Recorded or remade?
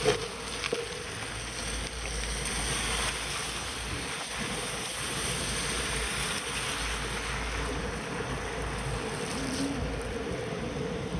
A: recorded